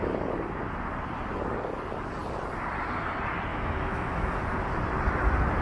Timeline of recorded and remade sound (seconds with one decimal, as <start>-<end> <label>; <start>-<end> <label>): 0.0-3.5 recorded; 3.5-4.3 remade; 4.3-5.6 recorded